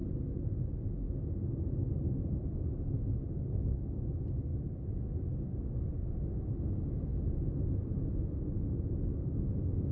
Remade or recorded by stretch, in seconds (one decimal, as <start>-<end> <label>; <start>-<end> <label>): 0.0-9.9 recorded